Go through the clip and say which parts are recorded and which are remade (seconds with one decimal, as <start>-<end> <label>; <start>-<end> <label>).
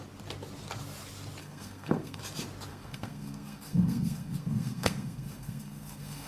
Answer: 0.0-1.4 recorded; 1.4-2.2 remade; 2.2-2.7 recorded; 2.7-6.3 remade